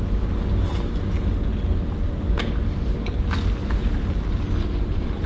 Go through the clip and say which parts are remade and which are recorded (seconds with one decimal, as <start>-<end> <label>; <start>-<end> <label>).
0.0-5.3 recorded